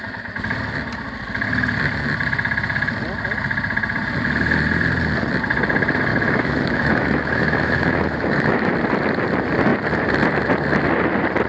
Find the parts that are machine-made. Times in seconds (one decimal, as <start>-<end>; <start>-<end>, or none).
6.1-8.7

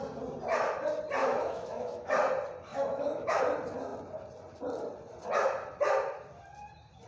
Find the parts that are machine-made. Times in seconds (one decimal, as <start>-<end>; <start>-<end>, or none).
1.2-2.1; 2.7-3.4

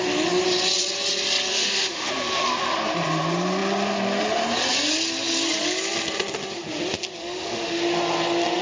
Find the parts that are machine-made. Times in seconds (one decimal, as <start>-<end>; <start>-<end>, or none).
1.5-2.1; 7.2-7.8

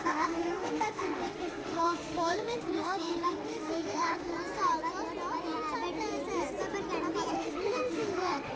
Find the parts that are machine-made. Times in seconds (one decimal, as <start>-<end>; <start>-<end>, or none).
0.0-4.3; 7.3-8.6

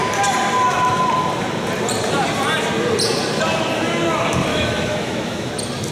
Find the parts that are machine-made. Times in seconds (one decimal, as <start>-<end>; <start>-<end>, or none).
4.5-5.5